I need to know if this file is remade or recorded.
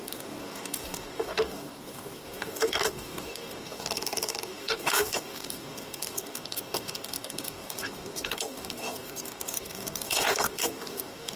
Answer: remade